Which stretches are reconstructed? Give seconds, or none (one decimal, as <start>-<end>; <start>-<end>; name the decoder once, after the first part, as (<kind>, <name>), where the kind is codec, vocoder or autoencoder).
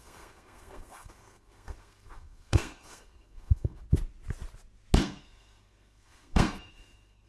0.0-3.8 (codec, SNAC); 5.0-7.3